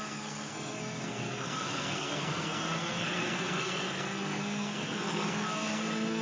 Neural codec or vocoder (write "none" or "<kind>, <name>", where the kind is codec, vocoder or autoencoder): codec, SNAC